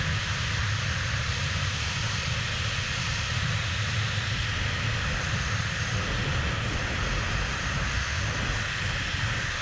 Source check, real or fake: real